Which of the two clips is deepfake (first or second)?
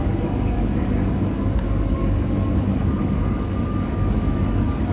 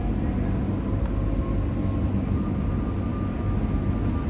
first